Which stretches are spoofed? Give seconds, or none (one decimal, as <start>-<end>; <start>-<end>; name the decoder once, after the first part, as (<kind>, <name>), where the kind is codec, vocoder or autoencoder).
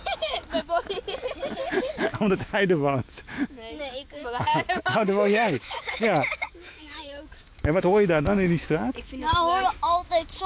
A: 0.0-0.9 (autoencoder, DAC-VAE); 1.8-10.5